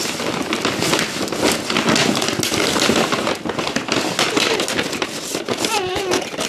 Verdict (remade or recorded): recorded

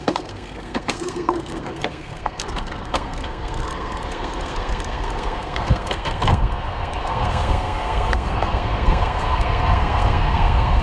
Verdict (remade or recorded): remade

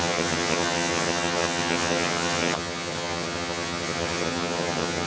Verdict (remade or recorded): remade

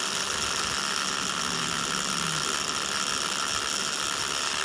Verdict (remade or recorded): recorded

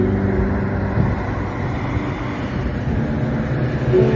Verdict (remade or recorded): recorded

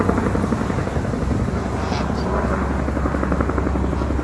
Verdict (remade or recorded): recorded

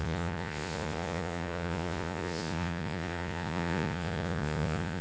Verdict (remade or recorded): remade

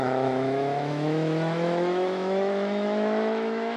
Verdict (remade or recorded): remade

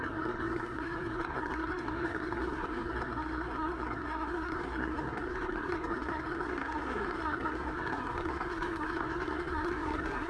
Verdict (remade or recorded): remade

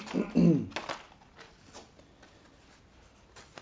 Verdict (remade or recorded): recorded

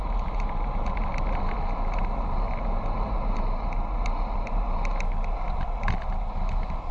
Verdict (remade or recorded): recorded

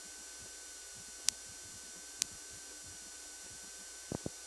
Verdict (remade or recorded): recorded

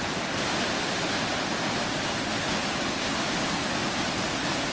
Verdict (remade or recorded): recorded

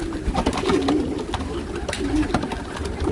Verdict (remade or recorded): recorded